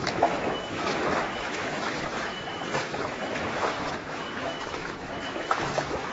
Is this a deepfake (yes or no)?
yes